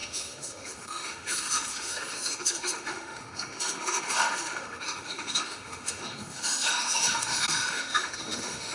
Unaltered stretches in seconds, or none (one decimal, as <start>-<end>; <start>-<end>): none

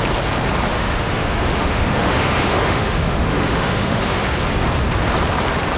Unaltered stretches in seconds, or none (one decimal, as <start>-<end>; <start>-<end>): 0.0-0.7; 4.2-5.8

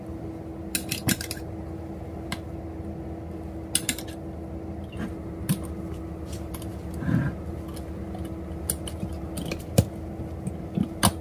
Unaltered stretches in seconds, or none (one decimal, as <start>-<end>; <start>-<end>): 0.0-11.2

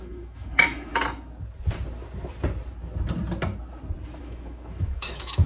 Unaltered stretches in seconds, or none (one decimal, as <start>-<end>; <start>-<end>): 0.9-4.2